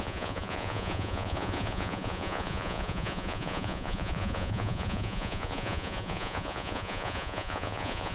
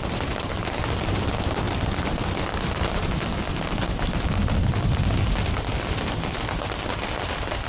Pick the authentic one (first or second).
second